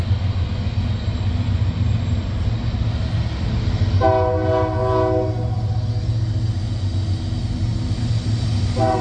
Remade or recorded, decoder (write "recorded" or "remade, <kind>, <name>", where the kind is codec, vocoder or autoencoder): recorded